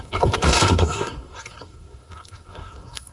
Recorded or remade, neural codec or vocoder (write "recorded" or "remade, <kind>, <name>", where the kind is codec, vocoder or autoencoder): remade, codec, SNAC